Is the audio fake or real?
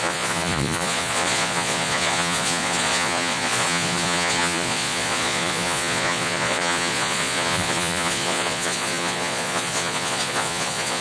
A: fake